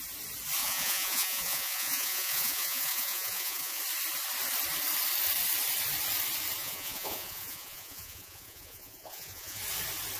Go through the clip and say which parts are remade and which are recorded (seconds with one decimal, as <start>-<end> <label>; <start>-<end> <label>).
0.0-0.6 recorded; 0.6-3.8 remade; 3.8-6.6 recorded; 6.6-9.6 remade; 9.6-10.2 recorded